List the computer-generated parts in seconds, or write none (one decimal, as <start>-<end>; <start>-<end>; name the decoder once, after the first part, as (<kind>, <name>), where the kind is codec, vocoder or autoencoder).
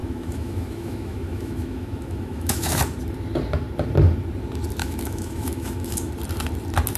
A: 0.0-2.8 (autoencoder, DAC-VAE); 4.8-6.1